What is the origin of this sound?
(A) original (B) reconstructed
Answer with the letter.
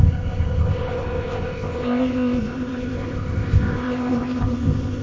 B